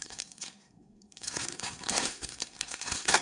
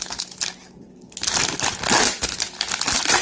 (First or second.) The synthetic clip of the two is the first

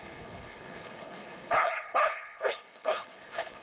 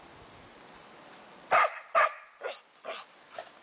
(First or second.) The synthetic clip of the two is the first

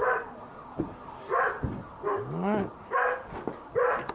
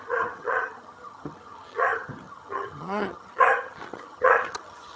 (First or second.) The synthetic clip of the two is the second